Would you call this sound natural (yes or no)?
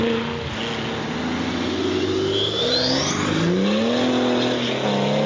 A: yes